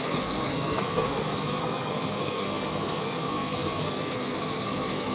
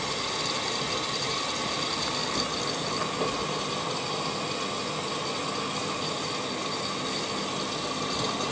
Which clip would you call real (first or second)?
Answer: second